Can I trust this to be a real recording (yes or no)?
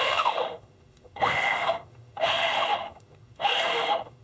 no